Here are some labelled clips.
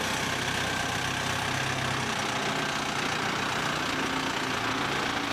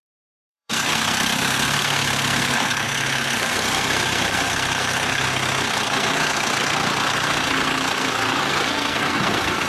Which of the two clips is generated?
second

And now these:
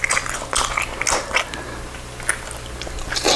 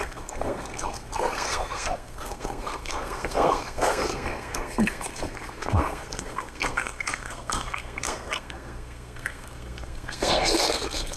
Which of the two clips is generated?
second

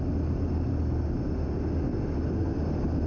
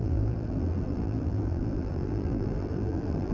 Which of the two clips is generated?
second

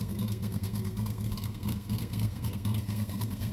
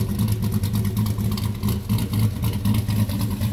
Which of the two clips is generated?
first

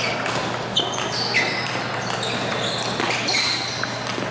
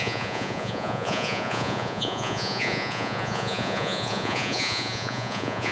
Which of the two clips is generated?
second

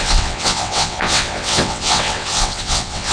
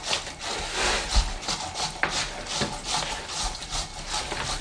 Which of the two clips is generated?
first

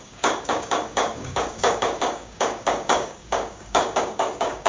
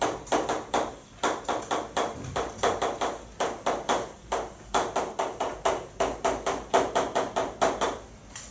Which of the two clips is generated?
first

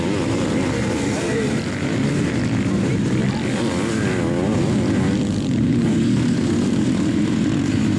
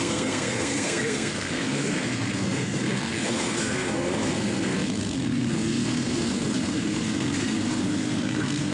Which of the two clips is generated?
second